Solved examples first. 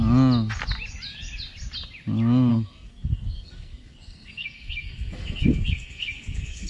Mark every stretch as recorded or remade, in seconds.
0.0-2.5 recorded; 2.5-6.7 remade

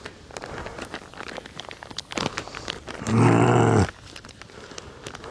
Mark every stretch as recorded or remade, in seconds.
0.0-5.3 recorded

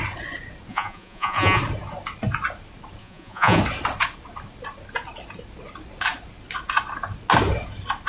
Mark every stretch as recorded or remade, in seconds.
0.0-0.7 recorded; 0.7-1.6 remade; 1.6-3.0 recorded; 3.0-3.6 remade; 3.6-8.1 recorded

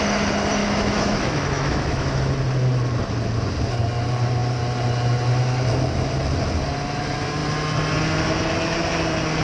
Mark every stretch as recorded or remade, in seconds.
0.0-0.6 recorded; 0.6-2.2 remade; 2.2-9.4 recorded